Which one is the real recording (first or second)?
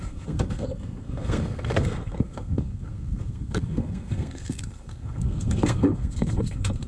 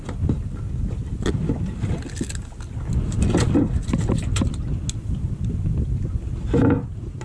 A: second